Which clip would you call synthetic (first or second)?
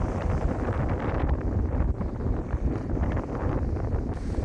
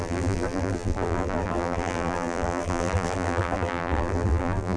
second